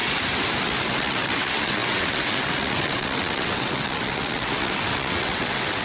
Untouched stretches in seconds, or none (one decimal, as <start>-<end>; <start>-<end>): 0.0-0.6